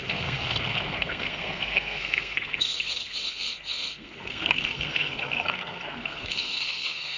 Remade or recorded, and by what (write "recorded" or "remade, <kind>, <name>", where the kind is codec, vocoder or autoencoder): remade, codec, SNAC